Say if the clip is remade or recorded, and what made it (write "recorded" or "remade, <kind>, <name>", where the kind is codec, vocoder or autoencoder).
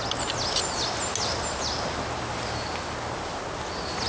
recorded